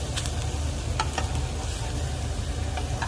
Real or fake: real